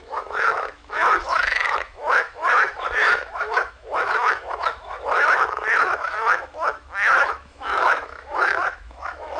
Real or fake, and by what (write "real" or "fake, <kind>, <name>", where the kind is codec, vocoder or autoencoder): fake, autoencoder, DAC-VAE